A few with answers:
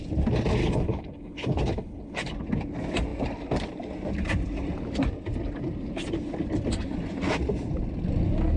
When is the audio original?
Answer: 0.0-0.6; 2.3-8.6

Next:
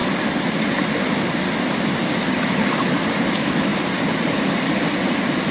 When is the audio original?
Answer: 0.0-3.3; 3.7-5.5

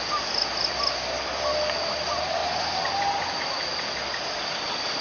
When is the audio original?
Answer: 0.0-5.0

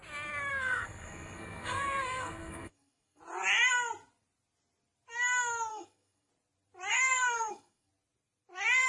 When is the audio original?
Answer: 0.0-0.5; 3.2-5.7; 6.3-6.9; 7.9-8.9

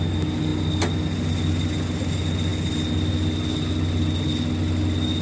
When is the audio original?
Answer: 0.0-5.2

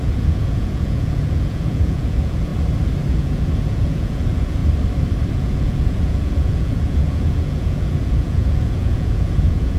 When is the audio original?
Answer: 2.5-3.1; 4.6-5.3

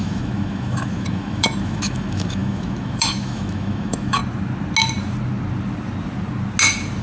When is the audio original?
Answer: 4.2-7.0

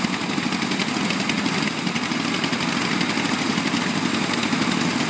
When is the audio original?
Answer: 0.0-5.1